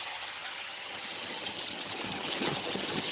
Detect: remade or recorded remade